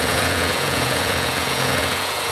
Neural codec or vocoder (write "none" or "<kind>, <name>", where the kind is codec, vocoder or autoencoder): vocoder, Vocos